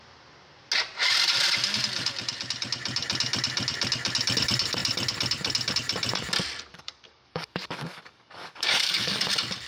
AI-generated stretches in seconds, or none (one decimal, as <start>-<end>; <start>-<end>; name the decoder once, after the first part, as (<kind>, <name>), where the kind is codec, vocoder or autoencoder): 6.7-9.2 (codec, DAC)